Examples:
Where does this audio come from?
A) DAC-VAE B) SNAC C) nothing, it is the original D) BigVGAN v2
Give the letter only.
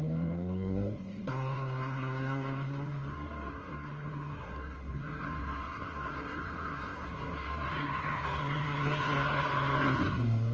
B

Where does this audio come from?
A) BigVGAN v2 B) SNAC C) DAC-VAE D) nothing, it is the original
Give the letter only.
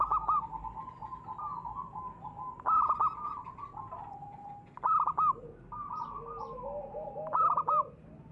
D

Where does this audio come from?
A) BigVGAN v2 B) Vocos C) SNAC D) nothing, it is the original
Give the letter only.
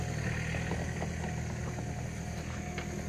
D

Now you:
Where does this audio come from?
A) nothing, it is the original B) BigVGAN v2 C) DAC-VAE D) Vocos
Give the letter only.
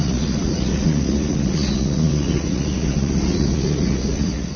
D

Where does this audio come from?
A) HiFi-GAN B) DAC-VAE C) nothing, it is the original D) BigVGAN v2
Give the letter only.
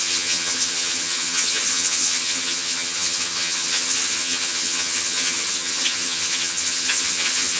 A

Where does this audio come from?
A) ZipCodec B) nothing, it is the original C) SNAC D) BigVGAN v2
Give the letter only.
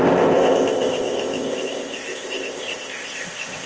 A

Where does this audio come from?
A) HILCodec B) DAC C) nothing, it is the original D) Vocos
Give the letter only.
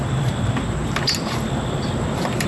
C